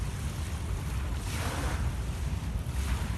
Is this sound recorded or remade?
recorded